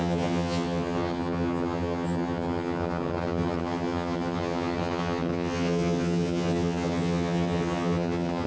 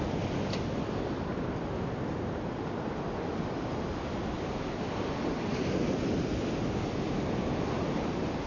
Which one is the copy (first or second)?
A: first